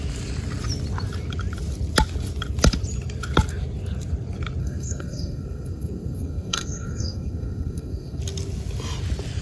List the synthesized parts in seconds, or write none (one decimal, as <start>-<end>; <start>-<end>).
4.6-8.2